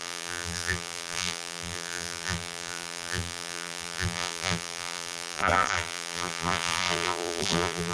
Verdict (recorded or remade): remade